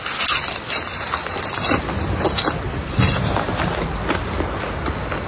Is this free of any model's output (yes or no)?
yes